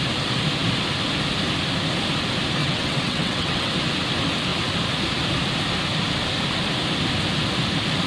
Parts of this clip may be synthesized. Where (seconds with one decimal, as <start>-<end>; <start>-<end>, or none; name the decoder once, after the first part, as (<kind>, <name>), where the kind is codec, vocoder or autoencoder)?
2.6-3.7 (vocoder, WaveNeXt)